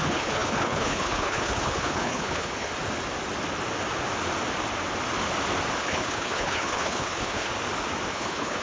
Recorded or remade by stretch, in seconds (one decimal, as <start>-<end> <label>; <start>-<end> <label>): 0.0-2.7 remade; 2.7-5.8 recorded; 5.8-7.5 remade; 7.5-8.1 recorded; 8.1-8.6 remade